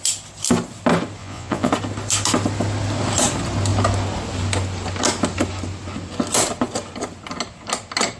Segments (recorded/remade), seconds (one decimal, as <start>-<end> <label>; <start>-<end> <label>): 0.0-1.2 recorded; 1.2-1.7 remade; 1.7-8.2 recorded